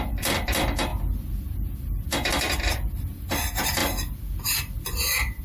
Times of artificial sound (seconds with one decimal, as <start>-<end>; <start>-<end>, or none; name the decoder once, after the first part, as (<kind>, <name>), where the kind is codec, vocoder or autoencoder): 0.0-0.9 (vocoder, BigVGAN v2); 2.6-5.4

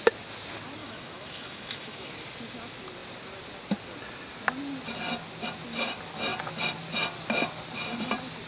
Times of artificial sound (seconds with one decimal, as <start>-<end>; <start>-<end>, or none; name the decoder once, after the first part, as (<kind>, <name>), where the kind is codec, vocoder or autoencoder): 0.8-2.1 (autoencoder, DAC-VAE)

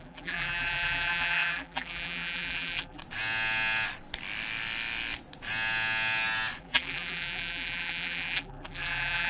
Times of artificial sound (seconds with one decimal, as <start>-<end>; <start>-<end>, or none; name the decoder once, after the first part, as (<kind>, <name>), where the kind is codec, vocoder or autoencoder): 0.0-3.0 (vocoder, BigVGAN v2); 6.6-9.3

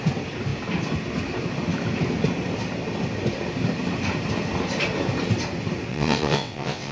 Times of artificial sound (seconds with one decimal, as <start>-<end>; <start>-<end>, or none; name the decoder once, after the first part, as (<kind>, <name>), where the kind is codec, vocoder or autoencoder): 5.9-6.9 (vocoder, WaveNeXt)